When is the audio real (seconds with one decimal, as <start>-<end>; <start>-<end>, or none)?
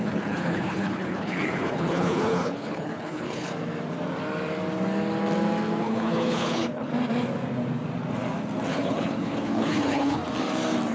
3.5-5.8; 6.9-8.7; 10.2-10.9